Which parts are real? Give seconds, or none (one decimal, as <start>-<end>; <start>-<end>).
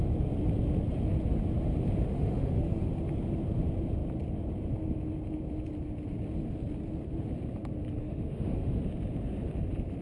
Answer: 0.0-2.1; 2.9-8.0; 8.8-10.0